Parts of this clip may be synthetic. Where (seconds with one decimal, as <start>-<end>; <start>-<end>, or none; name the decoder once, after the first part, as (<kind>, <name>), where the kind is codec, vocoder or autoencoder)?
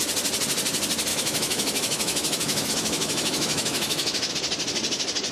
1.1-4.3 (autoencoder, DAC-VAE)